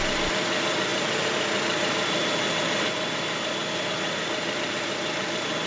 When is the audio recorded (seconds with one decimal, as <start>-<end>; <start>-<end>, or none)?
0.0-5.7

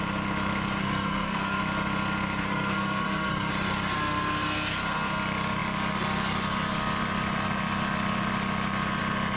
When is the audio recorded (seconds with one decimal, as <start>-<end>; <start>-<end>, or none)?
0.0-0.8; 1.6-2.4; 3.5-9.4

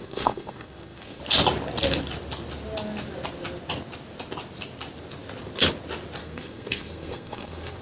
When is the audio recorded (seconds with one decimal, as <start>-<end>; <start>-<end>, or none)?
1.2-6.2